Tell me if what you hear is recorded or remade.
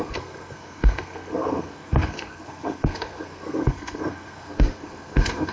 remade